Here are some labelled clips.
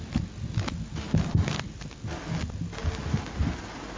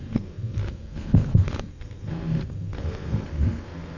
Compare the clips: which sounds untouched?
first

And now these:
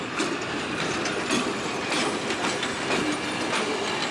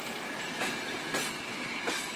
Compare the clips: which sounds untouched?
first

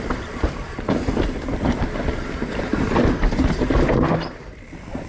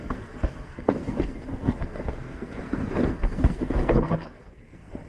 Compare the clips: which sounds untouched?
first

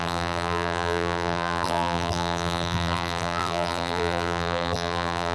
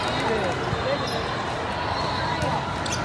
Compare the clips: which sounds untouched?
second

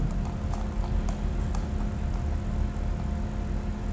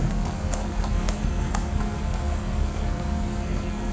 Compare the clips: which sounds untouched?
first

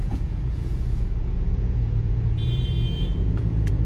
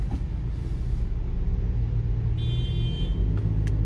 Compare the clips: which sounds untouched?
second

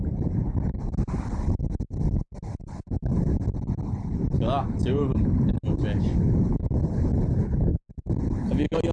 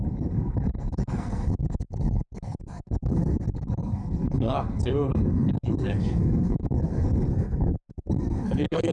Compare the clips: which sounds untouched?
first